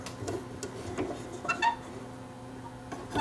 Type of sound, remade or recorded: recorded